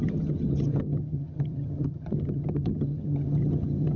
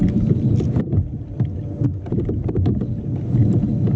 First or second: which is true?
second